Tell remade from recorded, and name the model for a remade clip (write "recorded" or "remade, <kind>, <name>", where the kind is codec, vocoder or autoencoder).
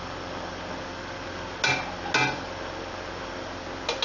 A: recorded